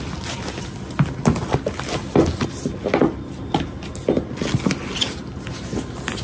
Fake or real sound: real